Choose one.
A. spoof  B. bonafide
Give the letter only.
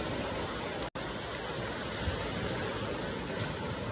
B